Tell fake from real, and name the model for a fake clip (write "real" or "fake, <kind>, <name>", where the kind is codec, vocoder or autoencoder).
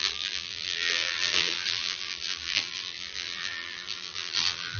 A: fake, vocoder, BigVGAN v2